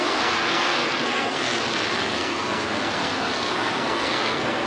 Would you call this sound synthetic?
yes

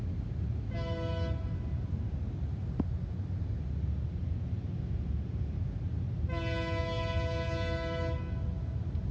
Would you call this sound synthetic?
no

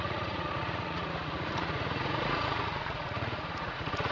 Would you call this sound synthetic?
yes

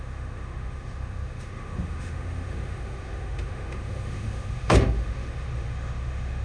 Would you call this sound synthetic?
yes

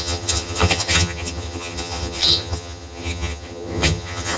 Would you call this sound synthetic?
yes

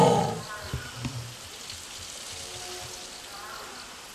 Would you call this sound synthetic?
no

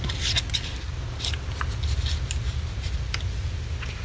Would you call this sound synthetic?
no